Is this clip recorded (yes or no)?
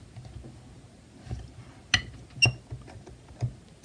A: yes